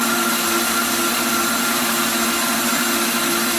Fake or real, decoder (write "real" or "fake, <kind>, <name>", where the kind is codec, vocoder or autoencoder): real